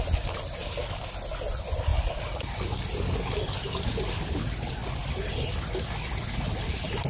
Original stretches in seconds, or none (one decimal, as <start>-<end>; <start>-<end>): 0.0-4.8; 5.5-7.1